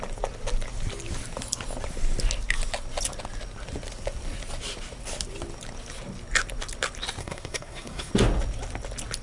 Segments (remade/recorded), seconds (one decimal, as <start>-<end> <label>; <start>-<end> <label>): 0.0-7.2 recorded; 7.2-8.1 remade; 8.1-9.2 recorded